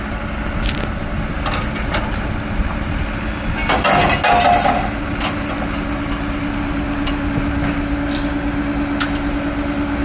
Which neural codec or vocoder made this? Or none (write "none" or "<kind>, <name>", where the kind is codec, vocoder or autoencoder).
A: none